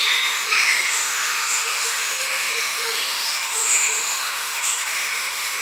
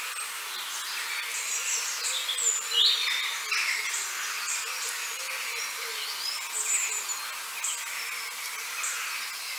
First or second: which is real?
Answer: second